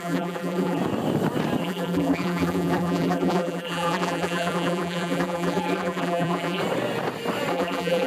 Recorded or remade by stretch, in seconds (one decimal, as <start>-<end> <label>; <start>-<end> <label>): 0.0-0.8 remade; 0.8-1.6 recorded; 1.6-6.6 remade; 6.6-7.5 recorded; 7.5-8.1 remade